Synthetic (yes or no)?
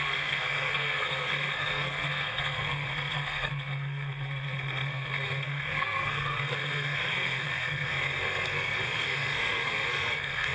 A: yes